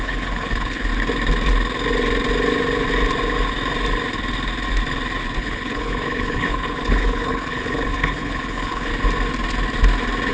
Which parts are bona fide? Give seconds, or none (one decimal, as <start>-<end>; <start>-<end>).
0.9-5.4; 8.9-10.3